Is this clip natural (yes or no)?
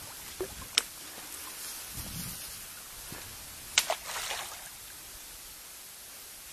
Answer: yes